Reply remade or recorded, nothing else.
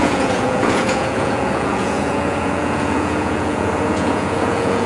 remade